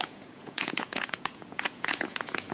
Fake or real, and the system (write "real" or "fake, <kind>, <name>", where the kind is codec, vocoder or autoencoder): fake, vocoder, Vocos